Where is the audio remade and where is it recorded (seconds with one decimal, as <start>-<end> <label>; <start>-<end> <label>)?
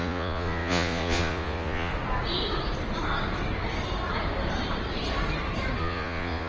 0.0-1.9 remade; 1.9-5.8 recorded; 5.8-6.5 remade